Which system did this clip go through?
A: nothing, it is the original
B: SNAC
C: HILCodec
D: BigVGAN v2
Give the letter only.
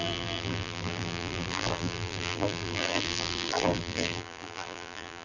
D